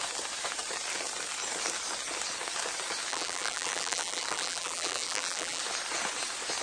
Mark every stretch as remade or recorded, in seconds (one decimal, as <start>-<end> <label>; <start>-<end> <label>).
0.0-3.1 recorded; 3.1-5.6 remade; 5.6-6.6 recorded